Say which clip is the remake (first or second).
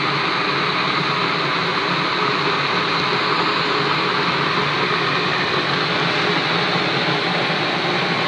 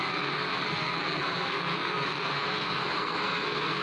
second